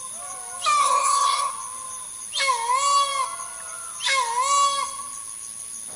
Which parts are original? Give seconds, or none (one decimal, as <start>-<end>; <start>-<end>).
0.0-0.8; 1.5-6.0